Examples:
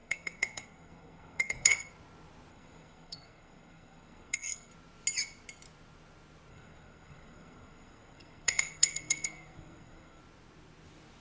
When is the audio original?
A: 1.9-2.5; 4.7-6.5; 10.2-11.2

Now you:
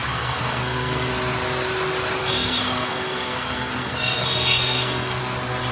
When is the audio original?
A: 1.1-2.2; 5.2-5.7

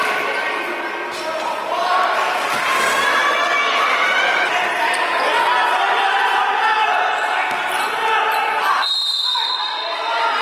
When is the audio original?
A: 3.2-3.7; 5.1-5.7; 6.8-8.7

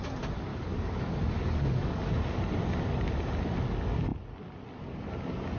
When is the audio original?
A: 0.0-0.5; 2.1-5.6

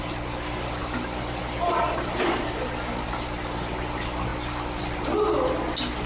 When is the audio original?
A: 0.0-0.8; 1.4-4.3; 4.8-6.1